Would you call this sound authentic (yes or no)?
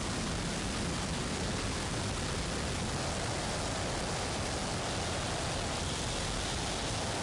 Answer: yes